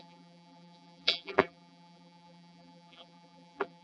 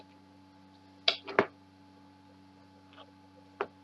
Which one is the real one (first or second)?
second